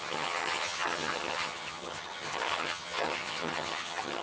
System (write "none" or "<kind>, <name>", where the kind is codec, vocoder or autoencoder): vocoder, HiFi-GAN